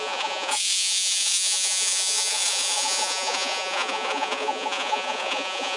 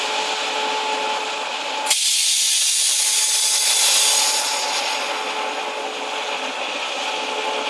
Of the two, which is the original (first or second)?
second